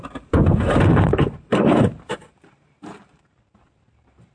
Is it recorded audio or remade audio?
remade